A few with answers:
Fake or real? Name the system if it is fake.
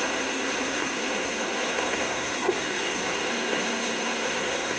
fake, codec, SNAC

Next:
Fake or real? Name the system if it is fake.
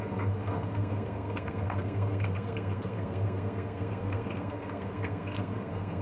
fake, codec, SNAC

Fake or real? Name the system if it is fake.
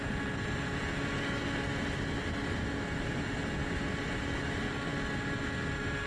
real